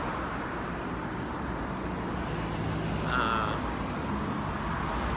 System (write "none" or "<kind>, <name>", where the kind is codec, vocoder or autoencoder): none